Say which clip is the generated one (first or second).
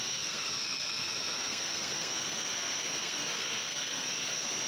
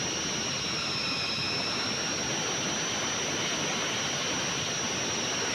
first